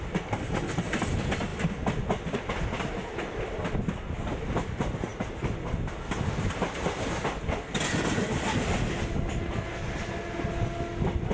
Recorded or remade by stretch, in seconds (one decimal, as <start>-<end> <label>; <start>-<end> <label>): 0.0-11.3 recorded